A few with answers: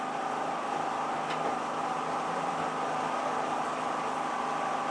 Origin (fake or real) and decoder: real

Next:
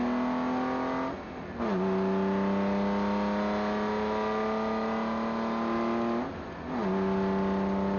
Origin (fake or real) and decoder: real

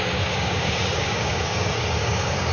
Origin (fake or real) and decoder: fake, codec, DAC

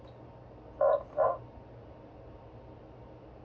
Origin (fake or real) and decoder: real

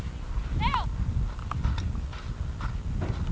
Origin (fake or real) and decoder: real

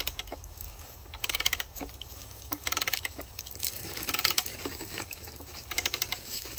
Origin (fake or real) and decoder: fake, codec, DAC